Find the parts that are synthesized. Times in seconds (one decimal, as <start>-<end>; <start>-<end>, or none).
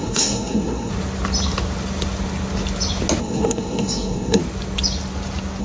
0.0-0.9; 3.2-4.4